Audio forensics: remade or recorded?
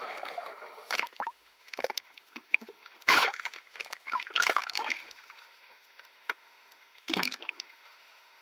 remade